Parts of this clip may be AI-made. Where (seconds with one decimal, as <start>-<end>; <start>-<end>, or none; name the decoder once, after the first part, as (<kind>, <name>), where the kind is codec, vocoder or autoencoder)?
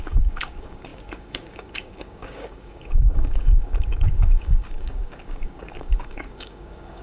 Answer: 0.0-7.0 (codec, DAC)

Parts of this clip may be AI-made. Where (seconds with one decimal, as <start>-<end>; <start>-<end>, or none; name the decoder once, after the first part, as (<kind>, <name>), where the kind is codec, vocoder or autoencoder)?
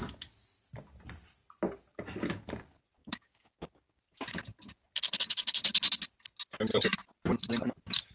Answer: 3.0-4.0 (codec, DAC)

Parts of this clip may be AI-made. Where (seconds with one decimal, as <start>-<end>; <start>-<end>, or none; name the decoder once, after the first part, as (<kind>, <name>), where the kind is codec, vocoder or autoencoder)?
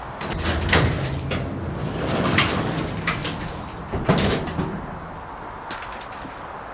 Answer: 1.8-2.7 (codec, DAC)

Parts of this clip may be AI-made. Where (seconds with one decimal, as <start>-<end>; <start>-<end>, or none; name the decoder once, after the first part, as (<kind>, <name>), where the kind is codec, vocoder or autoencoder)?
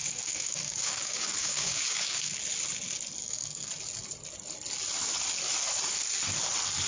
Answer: 0.0-2.4 (codec, DAC); 3.2-3.7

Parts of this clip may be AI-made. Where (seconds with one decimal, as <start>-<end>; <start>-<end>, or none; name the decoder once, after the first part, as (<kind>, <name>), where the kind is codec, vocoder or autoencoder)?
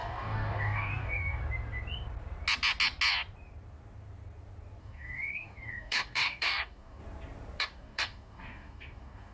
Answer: 0.0-1.4 (codec, DAC); 4.8-7.0; 7.6-9.3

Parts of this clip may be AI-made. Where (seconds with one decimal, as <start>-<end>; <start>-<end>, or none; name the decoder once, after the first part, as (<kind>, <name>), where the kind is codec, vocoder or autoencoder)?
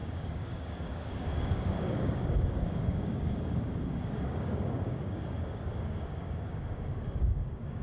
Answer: 0.0-7.8 (codec, DAC)